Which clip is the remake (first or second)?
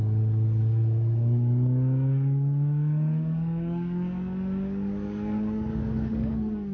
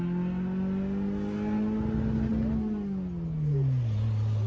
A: first